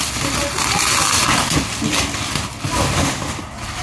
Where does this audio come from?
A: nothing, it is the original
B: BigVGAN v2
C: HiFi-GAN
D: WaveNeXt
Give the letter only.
A